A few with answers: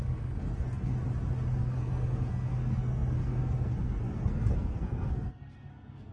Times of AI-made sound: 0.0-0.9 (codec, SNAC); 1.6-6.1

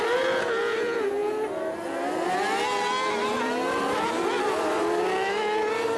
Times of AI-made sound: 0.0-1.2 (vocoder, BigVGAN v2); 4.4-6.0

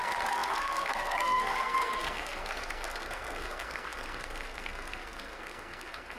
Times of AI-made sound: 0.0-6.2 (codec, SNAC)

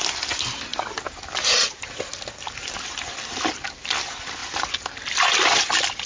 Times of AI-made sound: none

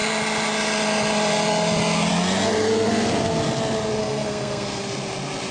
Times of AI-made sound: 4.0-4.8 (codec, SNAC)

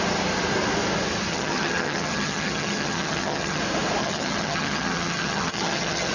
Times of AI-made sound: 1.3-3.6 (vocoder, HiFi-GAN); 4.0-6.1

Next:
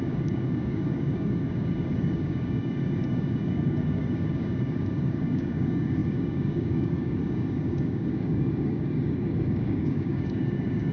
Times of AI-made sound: 0.0-10.9 (codec, DAC)

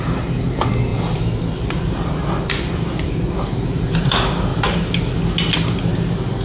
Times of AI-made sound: 0.0-4.5 (vocoder, BigVGAN v2)